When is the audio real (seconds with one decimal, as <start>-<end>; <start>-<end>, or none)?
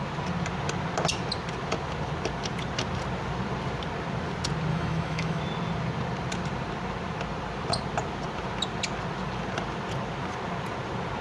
0.0-4.7; 5.4-11.2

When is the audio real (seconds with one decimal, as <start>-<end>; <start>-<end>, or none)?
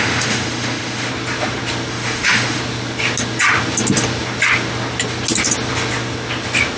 1.1-1.9; 2.6-6.8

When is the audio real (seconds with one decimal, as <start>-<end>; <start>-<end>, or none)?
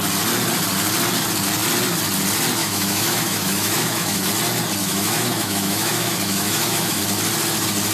0.0-2.6; 4.3-4.8; 7.0-7.9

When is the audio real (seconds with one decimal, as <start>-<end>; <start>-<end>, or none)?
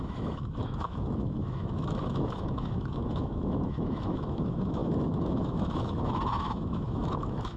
none